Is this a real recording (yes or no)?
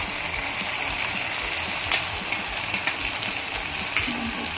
yes